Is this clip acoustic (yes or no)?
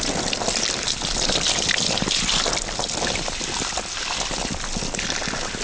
yes